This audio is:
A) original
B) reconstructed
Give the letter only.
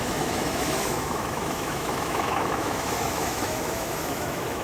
B